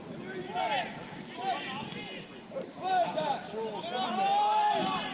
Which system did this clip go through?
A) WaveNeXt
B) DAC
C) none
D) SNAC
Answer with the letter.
C